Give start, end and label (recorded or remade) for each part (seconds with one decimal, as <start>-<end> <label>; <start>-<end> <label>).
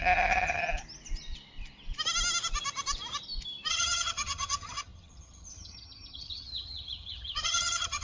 0.0-0.6 remade; 0.6-3.7 recorded; 3.7-8.0 remade